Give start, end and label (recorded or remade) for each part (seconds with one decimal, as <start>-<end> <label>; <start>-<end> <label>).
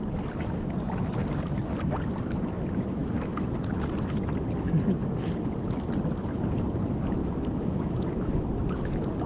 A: 0.0-3.0 recorded; 3.0-3.6 remade; 3.6-7.2 recorded; 7.2-9.3 remade